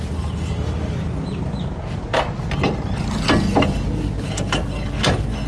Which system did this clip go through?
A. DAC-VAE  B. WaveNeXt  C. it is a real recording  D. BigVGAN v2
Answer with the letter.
C